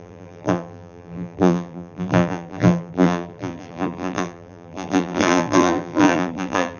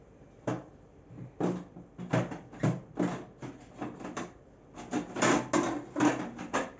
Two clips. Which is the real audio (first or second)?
second